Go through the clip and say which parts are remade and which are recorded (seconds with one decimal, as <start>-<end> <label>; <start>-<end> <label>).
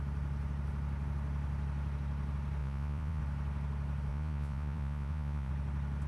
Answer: 0.0-2.6 recorded; 2.6-3.2 remade; 3.2-4.1 recorded; 4.1-5.5 remade; 5.5-6.1 recorded